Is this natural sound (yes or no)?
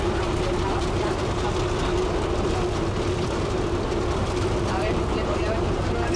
yes